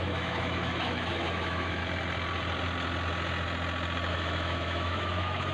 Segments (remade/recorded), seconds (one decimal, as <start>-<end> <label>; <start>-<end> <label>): 0.0-1.8 remade; 1.8-4.1 recorded; 4.1-5.5 remade